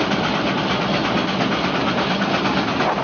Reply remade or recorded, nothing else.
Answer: recorded